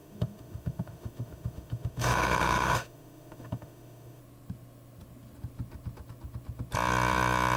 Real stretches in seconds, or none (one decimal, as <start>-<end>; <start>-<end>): 4.2-7.6